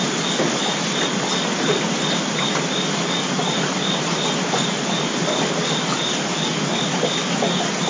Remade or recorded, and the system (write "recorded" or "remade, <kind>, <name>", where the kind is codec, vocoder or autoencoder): recorded